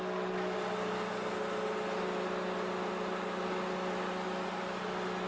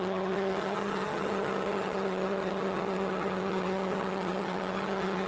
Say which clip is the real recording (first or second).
first